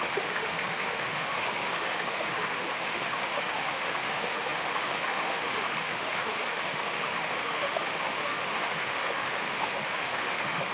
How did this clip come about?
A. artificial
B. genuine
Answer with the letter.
A